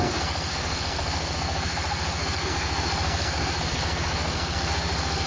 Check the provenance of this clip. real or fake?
fake